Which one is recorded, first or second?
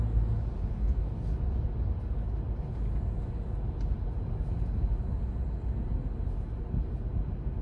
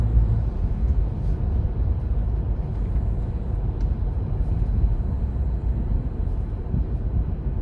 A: first